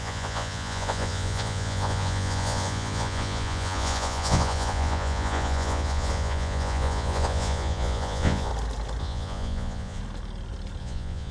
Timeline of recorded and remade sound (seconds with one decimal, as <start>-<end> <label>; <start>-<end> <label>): 0.0-8.5 remade; 8.5-9.0 recorded; 9.0-10.0 remade; 10.0-10.8 recorded; 10.8-11.3 remade